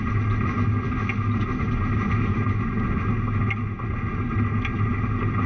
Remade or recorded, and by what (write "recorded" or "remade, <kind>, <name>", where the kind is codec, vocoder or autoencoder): recorded